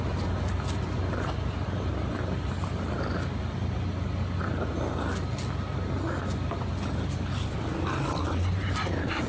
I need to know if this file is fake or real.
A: real